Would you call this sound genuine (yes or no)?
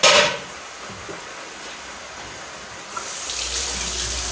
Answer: yes